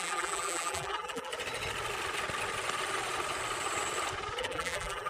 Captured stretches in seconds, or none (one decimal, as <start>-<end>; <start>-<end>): 1.3-4.4